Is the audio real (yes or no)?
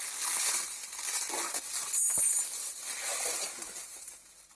yes